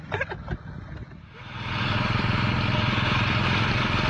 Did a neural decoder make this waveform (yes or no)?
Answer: no